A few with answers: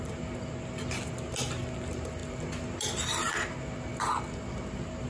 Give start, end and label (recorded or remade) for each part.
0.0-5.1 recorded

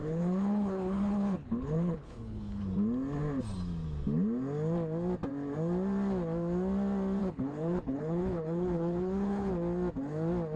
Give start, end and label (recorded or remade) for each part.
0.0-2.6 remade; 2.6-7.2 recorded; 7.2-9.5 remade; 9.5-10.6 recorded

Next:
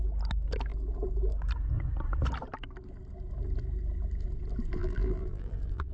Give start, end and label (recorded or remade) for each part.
0.0-4.8 recorded; 4.8-5.9 remade

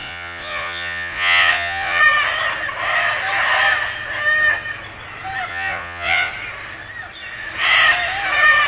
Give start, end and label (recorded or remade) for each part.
0.0-2.0 remade; 2.0-5.5 recorded; 5.5-6.3 remade; 6.3-8.7 recorded